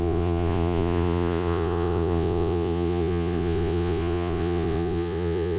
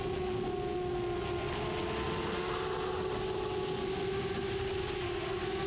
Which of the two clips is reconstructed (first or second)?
first